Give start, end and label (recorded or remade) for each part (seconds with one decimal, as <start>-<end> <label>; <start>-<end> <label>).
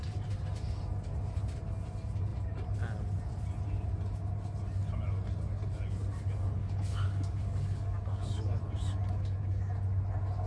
0.0-6.6 recorded; 6.6-8.6 remade; 8.6-10.5 recorded